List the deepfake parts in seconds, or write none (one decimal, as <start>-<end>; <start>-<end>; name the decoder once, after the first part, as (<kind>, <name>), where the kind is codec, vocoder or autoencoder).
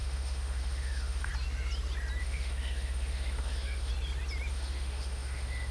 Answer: 0.0-1.3 (autoencoder, DAC-VAE); 2.2-3.9; 4.5-5.7